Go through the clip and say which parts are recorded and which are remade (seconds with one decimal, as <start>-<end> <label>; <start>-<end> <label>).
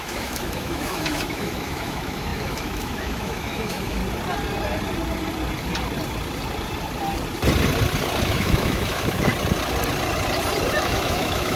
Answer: 0.0-4.0 remade; 4.0-8.2 recorded; 8.2-9.3 remade; 9.3-10.7 recorded; 10.7-11.6 remade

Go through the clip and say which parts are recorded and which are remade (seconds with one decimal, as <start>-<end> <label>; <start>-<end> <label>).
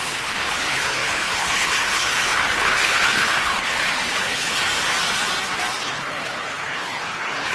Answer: 0.0-4.6 remade; 4.6-5.8 recorded; 5.8-7.5 remade